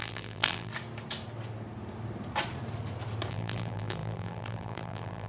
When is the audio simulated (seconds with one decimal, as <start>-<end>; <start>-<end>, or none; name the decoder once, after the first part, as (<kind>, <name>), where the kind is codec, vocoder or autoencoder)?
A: 0.0-0.7 (vocoder, BigVGAN v2); 3.3-5.3